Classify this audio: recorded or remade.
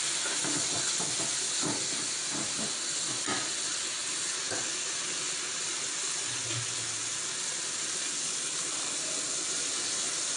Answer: recorded